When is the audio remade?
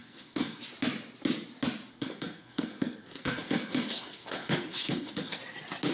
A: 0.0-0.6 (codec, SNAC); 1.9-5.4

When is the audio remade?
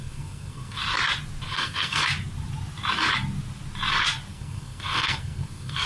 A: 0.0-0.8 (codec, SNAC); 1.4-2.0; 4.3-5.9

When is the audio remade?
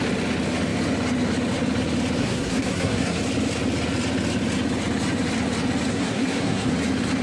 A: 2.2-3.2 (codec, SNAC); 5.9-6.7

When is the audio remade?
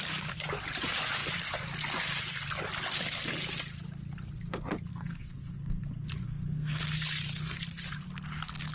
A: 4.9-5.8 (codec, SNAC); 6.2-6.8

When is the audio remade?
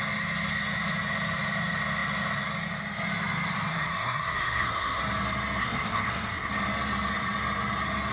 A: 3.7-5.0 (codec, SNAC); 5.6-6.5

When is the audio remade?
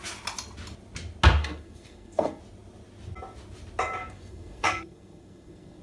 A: 1.4-2.4 (codec, SNAC); 4.0-5.8